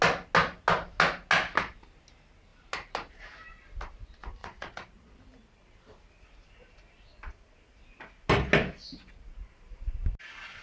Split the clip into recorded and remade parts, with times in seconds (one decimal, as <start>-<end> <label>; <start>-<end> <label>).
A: 0.0-4.4 recorded; 4.4-5.2 remade; 5.2-10.6 recorded